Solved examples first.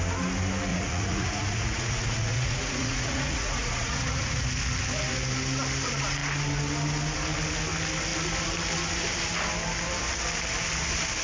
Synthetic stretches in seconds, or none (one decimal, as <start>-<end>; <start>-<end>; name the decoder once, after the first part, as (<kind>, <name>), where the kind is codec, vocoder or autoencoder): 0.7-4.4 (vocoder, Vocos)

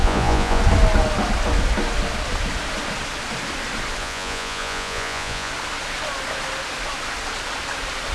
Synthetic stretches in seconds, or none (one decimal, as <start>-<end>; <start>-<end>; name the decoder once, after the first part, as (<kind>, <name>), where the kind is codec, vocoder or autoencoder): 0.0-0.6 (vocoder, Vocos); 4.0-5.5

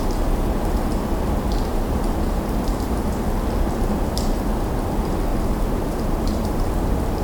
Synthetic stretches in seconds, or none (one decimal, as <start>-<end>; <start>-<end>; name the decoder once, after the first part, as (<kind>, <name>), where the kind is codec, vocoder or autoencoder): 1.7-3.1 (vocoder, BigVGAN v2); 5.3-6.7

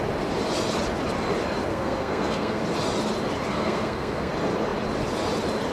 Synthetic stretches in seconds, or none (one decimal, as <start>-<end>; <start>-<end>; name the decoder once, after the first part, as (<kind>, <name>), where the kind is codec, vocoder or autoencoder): 1.7-2.6 (codec, SNAC); 3.5-4.3